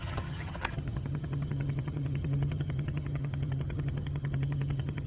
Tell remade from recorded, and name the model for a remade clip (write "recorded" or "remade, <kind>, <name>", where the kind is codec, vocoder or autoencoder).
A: remade, vocoder, HiFi-GAN